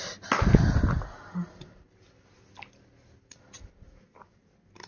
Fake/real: real